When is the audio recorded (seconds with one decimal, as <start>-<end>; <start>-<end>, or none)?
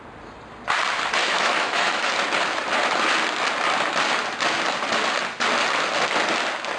0.0-1.2; 2.1-6.8